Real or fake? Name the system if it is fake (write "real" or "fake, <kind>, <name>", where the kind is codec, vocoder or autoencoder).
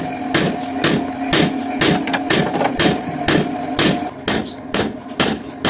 real